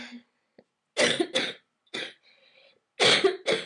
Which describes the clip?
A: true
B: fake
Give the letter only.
A